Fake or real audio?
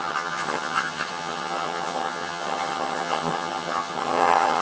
fake